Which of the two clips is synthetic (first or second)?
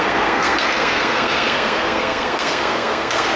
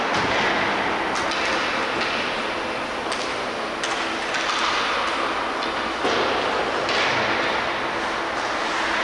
first